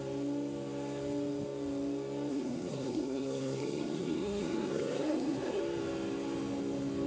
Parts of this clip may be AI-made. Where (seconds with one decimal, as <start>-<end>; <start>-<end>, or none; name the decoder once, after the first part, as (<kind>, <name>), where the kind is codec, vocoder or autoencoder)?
2.3-5.6 (codec, SNAC)